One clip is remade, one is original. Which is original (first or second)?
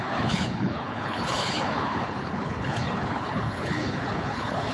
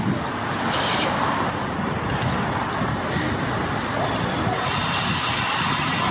second